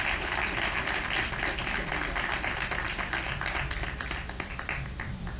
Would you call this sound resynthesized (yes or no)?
no